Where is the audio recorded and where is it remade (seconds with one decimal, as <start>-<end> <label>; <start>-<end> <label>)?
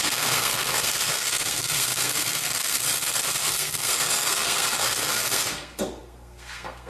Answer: 0.0-6.9 remade